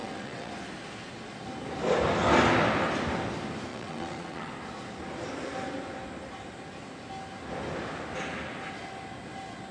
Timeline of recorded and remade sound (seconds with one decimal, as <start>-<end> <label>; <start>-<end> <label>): 0.0-0.5 remade; 0.5-3.7 recorded; 3.7-4.5 remade; 4.5-9.7 recorded